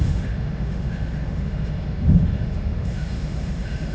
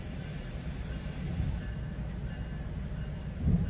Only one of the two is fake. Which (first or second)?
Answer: first